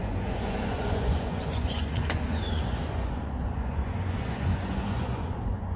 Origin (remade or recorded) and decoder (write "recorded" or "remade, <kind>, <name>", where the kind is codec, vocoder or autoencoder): remade, vocoder, Vocos